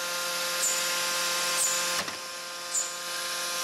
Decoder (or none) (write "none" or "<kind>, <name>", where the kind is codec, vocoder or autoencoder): none